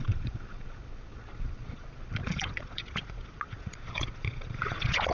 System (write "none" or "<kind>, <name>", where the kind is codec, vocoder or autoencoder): vocoder, Vocos